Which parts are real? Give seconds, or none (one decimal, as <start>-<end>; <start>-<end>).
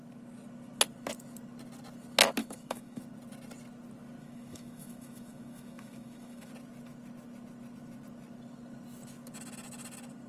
0.0-2.4; 3.0-4.2; 6.5-10.3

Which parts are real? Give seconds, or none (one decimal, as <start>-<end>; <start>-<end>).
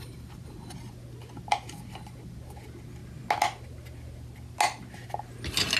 0.0-5.8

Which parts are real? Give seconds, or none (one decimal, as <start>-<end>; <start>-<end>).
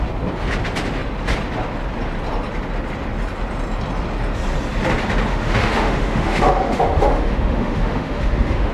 0.0-5.3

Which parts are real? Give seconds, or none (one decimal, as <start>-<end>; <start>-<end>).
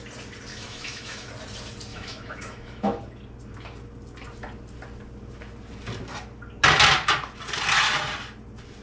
0.0-0.5; 1.3-1.9; 3.0-8.8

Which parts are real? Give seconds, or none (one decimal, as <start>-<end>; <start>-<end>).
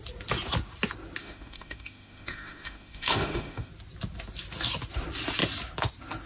0.0-1.2; 3.7-6.3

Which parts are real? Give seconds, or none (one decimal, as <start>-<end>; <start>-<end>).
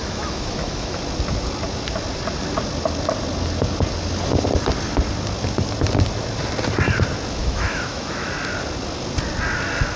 1.0-7.4; 8.3-10.0